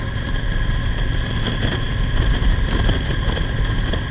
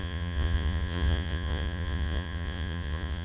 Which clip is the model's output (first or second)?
second